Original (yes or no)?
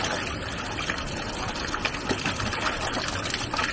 yes